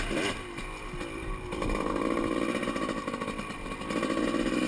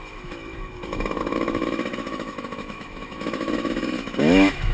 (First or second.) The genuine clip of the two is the first